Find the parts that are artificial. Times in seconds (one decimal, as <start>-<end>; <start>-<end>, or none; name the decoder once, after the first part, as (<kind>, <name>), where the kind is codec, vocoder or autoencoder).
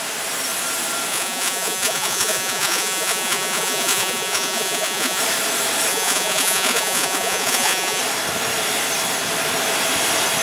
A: 1.1-5.2 (vocoder, Vocos); 5.9-8.0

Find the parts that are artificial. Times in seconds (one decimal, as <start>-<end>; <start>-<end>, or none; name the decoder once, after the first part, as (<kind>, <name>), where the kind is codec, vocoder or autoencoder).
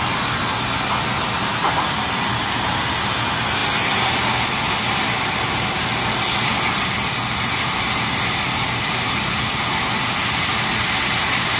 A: none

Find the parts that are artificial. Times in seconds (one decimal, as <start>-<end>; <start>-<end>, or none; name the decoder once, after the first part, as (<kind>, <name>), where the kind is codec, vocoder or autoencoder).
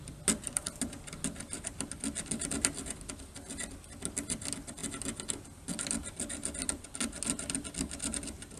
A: none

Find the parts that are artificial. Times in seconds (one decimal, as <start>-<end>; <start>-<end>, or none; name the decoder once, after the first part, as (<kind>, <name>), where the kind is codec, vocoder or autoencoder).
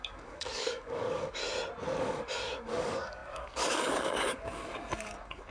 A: 0.0-1.4 (codec, DAC); 2.0-5.5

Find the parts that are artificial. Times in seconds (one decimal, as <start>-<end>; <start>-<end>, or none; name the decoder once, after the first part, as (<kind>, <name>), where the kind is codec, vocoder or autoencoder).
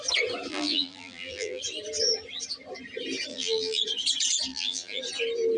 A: 0.5-1.6 (vocoder, BigVGAN v2); 3.3-3.8; 4.5-5.0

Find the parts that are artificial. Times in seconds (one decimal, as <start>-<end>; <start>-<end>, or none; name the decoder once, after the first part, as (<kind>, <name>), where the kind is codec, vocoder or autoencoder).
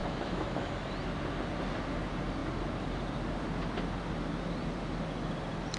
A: 0.0-0.7 (autoencoder, DAC-VAE)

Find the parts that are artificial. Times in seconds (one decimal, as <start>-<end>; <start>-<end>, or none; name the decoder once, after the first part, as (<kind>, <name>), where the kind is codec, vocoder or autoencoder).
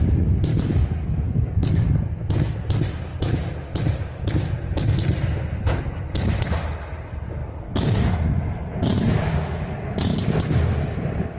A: 0.5-2.0 (codec, DAC); 7.4-8.1